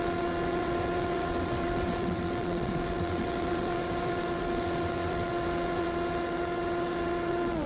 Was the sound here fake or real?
fake